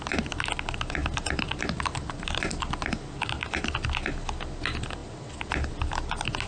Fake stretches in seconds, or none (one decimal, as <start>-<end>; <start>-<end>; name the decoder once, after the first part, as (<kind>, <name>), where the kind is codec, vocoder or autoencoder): none